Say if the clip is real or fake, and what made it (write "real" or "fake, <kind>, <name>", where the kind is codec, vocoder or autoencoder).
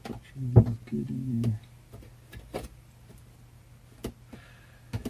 real